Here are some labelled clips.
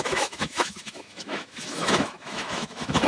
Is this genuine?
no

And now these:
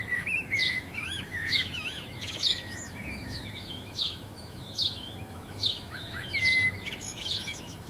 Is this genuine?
no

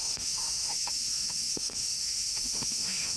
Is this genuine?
no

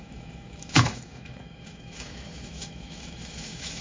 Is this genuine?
no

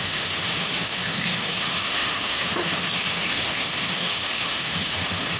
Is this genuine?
no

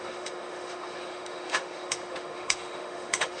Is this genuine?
no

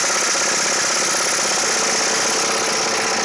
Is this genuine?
yes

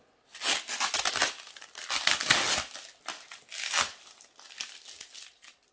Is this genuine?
yes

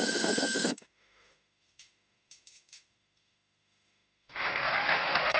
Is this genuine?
no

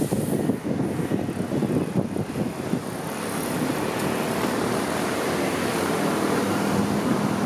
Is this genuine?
yes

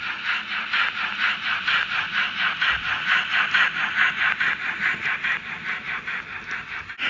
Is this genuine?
yes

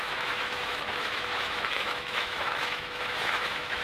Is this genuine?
no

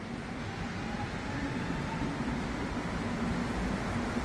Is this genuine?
yes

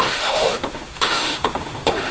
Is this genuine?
no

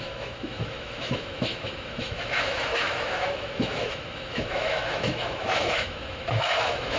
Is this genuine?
no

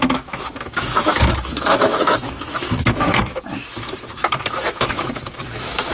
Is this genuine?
no